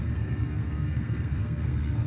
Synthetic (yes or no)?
yes